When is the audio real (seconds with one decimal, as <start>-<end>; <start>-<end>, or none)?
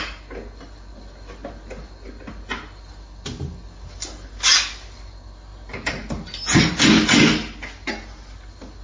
0.0-8.8